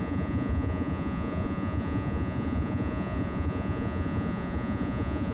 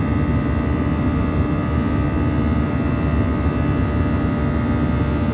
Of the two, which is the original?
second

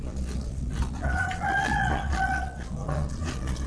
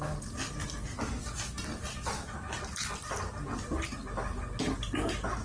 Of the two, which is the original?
second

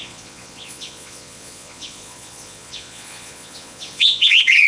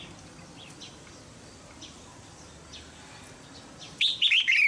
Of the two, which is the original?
second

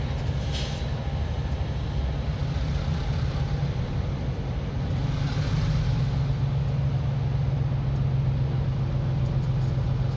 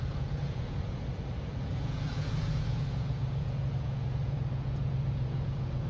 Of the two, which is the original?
first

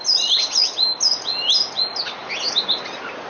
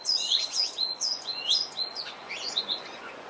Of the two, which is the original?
first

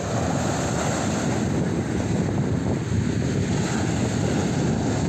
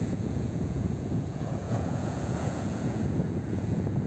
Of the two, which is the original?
first